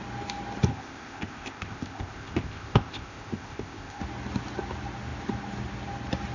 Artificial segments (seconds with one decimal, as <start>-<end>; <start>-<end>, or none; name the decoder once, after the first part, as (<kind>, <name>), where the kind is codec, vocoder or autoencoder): 0.7-4.0 (codec, ZipCodec)